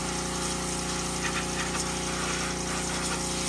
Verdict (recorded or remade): recorded